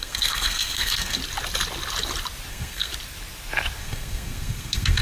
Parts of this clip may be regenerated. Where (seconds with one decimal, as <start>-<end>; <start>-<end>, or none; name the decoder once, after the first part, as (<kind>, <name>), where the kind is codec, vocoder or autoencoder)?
0.0-1.2 (codec, SNAC); 2.5-2.9; 3.8-5.0